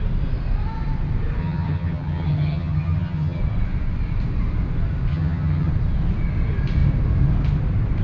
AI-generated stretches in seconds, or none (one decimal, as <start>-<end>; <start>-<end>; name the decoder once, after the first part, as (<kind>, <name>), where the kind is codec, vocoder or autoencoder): 1.4-3.4 (vocoder, HiFi-GAN); 5.1-5.7